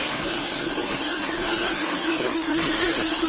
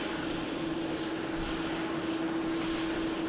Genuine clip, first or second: second